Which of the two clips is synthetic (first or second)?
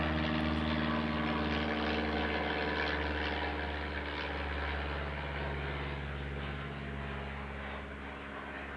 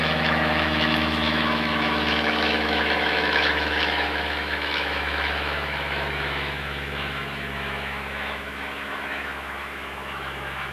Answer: second